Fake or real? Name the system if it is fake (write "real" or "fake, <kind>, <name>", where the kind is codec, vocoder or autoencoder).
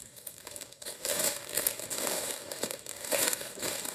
fake, codec, DAC